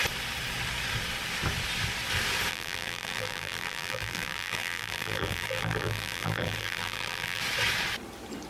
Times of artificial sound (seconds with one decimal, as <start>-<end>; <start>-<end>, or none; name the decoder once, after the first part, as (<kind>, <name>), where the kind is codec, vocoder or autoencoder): 2.5-7.4 (vocoder, BigVGAN v2)